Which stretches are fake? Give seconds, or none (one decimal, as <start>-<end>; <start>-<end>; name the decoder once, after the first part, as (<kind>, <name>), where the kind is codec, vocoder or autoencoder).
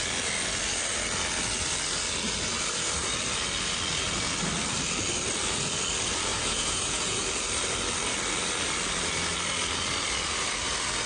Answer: 6.3-7.2 (vocoder, Vocos)